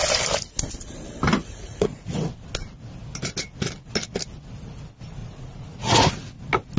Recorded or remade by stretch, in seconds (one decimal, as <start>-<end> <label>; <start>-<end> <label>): 0.0-1.4 recorded; 1.4-2.1 remade; 2.1-5.2 recorded; 5.2-6.1 remade; 6.1-6.8 recorded